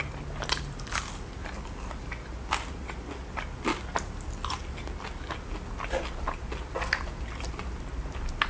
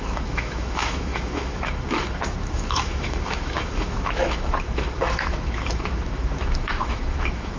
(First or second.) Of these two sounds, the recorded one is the first